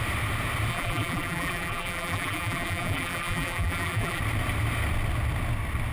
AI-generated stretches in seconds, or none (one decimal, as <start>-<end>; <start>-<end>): 0.7-4.2